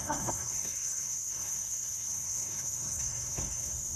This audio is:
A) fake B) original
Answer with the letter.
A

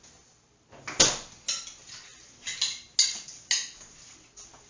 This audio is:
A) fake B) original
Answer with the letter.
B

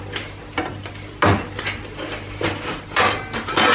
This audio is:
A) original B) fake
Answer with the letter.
A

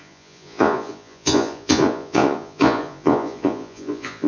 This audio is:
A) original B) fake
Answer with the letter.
B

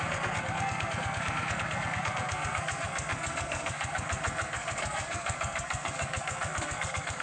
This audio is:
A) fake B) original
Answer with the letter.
A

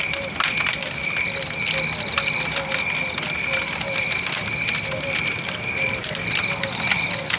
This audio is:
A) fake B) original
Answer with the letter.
B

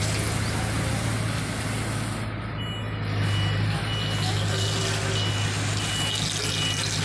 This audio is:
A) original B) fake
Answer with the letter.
A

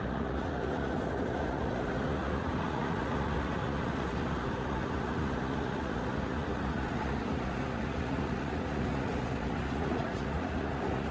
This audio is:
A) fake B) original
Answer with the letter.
A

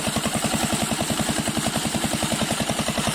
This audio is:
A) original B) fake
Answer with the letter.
A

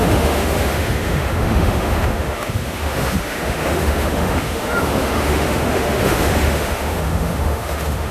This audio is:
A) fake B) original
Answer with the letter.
A